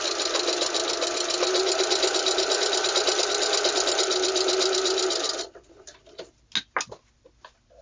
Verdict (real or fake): real